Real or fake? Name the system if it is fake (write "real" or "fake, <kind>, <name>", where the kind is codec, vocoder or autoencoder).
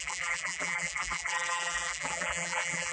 fake, vocoder, BigVGAN v2